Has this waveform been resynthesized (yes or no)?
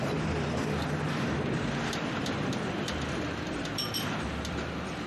yes